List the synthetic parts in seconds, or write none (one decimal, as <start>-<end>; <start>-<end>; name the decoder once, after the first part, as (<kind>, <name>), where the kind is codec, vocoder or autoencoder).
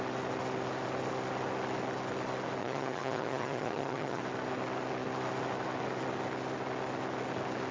2.6-4.2 (vocoder, HiFi-GAN)